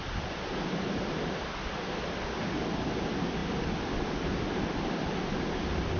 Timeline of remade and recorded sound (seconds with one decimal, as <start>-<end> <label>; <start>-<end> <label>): 0.0-6.0 recorded